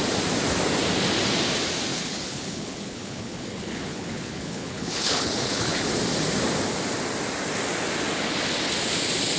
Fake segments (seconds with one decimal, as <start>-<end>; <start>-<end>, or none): 1.9-5.9